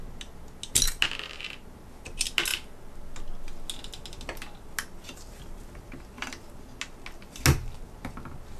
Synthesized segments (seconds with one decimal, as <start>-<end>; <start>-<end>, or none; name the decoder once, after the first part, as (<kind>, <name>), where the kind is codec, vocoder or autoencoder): none